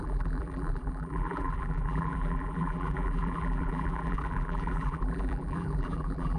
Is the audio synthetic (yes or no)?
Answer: yes